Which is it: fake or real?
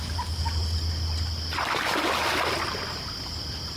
real